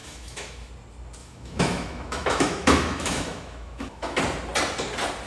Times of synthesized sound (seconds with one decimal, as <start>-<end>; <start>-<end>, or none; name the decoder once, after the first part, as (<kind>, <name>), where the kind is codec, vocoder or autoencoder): 0.0-0.7 (autoencoder, DAC-VAE); 1.2-4.2